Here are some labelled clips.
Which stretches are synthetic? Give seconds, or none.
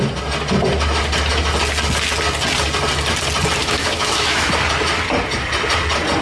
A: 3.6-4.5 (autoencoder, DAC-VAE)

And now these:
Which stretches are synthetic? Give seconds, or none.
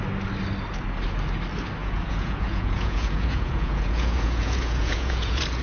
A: 1.8-5.6 (vocoder, Vocos)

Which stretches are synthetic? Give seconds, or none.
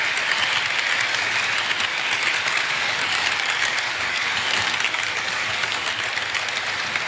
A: 1.9-5.9 (codec, DAC)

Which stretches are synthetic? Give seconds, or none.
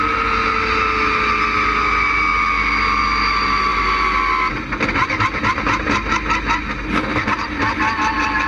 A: none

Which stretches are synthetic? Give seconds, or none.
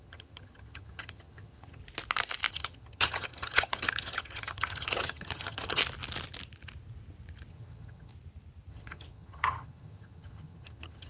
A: 0.0-1.8 (vocoder, HiFi-GAN); 2.5-5.8; 7.5-8.1; 8.7-11.1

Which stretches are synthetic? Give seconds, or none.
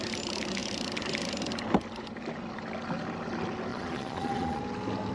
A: 3.7-4.6 (vocoder, Vocos)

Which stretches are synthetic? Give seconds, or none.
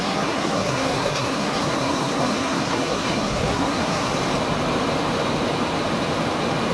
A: 0.0-4.1 (codec, SNAC)